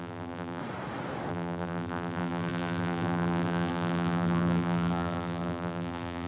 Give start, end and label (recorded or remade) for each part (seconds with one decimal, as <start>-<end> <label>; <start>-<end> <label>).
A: 0.0-0.6 remade; 0.6-1.3 recorded; 1.3-6.3 remade